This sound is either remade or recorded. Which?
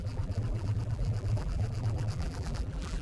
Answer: remade